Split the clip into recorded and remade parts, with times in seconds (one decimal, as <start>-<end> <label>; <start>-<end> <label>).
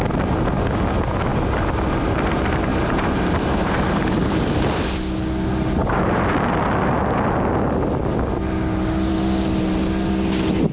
0.0-2.7 recorded; 2.7-4.8 remade; 4.8-5.8 recorded; 5.8-6.4 remade; 6.4-10.7 recorded